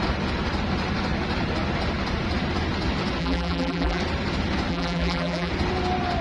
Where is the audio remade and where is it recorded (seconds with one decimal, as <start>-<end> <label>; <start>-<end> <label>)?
0.0-3.2 recorded; 3.2-4.0 remade; 4.0-4.7 recorded; 4.7-5.5 remade; 5.5-6.2 recorded